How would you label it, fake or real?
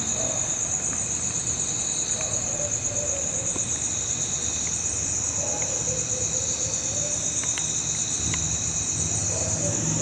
real